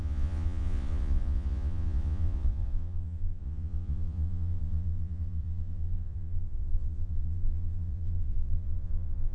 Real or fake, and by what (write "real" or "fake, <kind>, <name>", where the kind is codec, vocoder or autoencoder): fake, vocoder, Vocos